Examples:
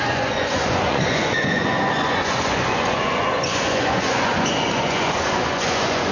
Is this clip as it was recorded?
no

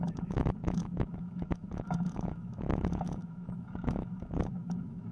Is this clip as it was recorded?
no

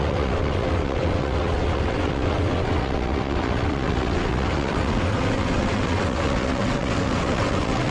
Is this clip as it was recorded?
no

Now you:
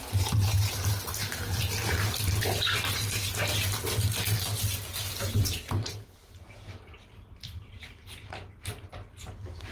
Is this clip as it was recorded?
no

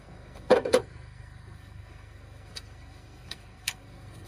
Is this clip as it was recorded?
no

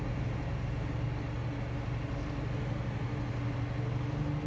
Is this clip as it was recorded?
yes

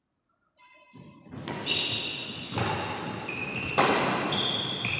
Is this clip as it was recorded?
yes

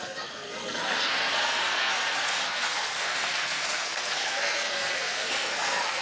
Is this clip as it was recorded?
no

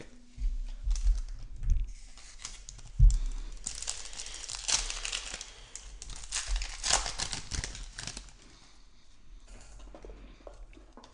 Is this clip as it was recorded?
yes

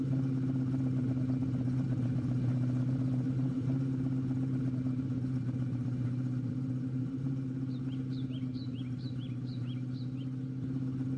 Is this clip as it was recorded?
no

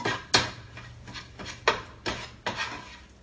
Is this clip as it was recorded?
yes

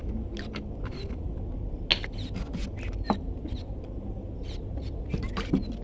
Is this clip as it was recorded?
yes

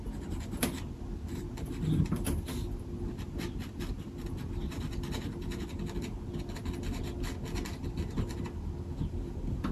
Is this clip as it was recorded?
yes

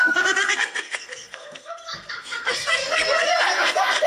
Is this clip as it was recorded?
no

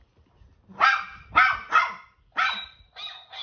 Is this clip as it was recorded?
yes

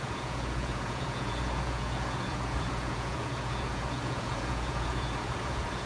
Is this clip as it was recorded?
no